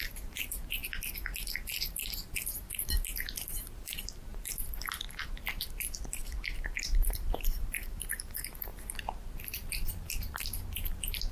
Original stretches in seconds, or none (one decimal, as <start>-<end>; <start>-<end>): 0.8-1.8; 6.2-6.8